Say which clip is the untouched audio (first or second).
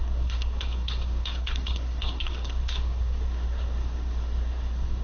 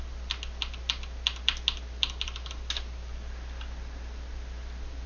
second